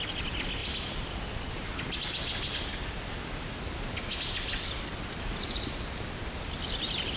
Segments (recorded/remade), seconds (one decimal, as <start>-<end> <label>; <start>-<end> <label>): 0.0-7.2 recorded